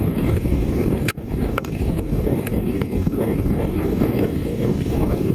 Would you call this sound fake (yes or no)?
yes